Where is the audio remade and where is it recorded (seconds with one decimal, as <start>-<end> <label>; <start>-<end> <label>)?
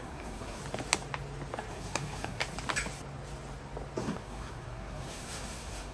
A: 0.0-0.6 remade; 0.6-1.7 recorded; 1.7-2.4 remade; 2.4-4.0 recorded; 4.0-5.9 remade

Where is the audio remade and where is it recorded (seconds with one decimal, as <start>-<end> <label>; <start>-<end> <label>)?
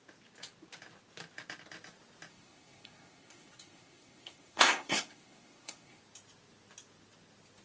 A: 0.0-2.3 recorded; 2.3-6.0 remade; 6.0-7.6 recorded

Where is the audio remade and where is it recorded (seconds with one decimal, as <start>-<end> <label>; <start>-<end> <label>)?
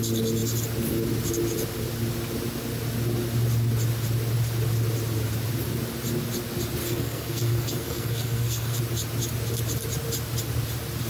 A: 0.0-6.8 recorded; 6.8-8.8 remade; 8.8-11.1 recorded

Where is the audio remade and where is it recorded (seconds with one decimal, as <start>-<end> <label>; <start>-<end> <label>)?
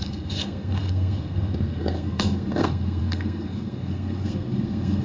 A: 0.0-5.0 remade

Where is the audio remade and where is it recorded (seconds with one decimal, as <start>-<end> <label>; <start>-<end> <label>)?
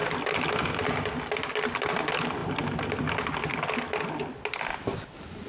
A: 0.0-5.5 recorded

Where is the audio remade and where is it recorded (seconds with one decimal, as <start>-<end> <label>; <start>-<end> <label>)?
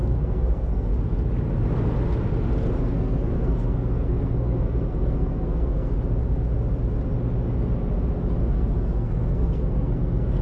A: 0.0-0.9 remade; 0.9-2.8 recorded; 2.8-5.9 remade; 5.9-8.4 recorded; 8.4-10.4 remade